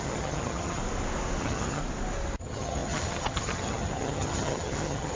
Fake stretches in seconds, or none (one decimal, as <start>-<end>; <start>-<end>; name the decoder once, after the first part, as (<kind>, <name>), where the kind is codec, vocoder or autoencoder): 0.0-0.8 (vocoder, HiFi-GAN); 1.4-1.8; 2.4-5.1